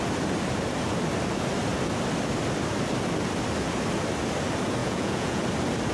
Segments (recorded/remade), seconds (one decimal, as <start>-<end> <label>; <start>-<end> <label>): 0.0-4.8 recorded; 4.8-5.4 remade; 5.4-5.9 recorded